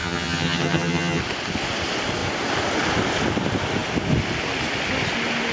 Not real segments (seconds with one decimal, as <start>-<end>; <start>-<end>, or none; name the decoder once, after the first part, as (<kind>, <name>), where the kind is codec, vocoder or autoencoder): 0.0-1.2 (vocoder, HiFi-GAN)